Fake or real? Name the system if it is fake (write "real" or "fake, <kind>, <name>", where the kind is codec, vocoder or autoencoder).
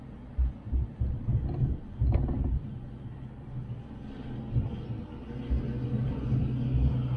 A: real